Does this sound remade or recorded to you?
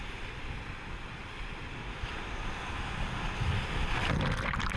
recorded